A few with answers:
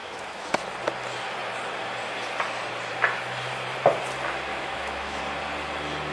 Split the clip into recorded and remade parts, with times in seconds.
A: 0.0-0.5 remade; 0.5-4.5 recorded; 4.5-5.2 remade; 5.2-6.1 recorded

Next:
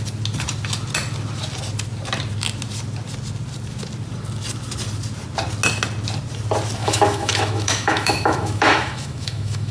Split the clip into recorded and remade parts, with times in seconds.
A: 0.0-6.8 recorded; 6.8-9.7 remade

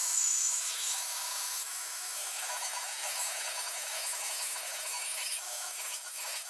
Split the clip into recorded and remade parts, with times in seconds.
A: 0.0-6.5 remade

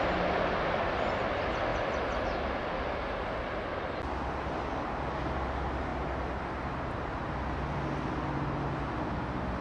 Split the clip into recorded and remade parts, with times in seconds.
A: 0.0-9.6 recorded